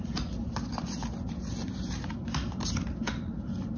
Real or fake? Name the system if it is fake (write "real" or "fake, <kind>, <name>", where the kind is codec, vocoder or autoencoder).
real